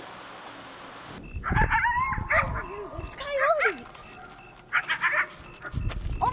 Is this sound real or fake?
real